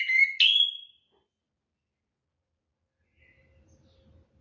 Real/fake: real